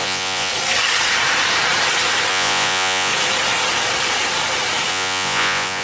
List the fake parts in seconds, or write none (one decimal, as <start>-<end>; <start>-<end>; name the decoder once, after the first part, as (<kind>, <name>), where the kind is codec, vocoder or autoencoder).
0.0-0.5 (vocoder, Vocos); 2.3-3.1; 4.9-5.8